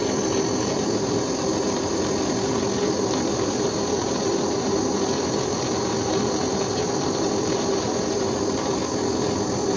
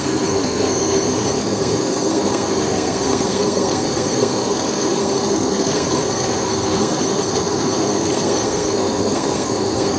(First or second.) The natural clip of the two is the first